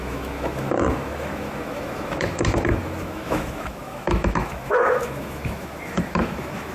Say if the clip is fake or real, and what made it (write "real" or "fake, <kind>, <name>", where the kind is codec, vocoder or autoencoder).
fake, autoencoder, DAC-VAE